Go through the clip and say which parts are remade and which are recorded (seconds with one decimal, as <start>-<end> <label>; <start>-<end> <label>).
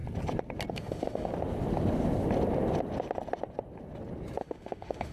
0.0-0.7 recorded; 0.7-1.3 remade; 1.3-4.4 recorded; 4.4-5.1 remade